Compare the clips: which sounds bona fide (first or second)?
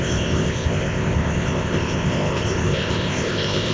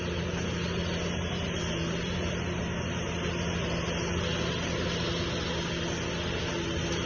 second